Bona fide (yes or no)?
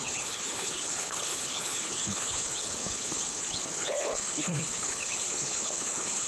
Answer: no